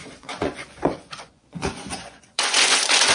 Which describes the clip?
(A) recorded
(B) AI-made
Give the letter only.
B